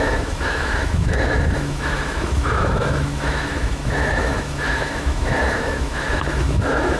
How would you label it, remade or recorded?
remade